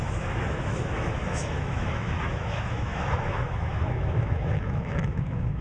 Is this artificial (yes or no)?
yes